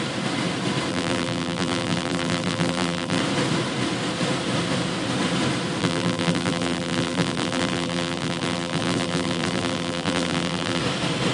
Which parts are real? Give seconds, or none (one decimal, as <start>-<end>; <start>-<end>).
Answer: 0.0-0.9; 3.2-5.8; 10.8-11.3